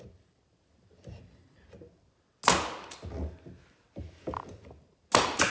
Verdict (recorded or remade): recorded